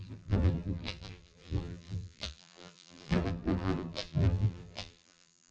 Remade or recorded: remade